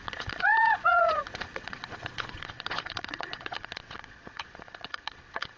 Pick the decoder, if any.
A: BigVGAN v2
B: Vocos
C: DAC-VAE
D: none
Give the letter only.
B